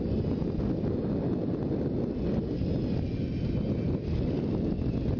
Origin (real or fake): real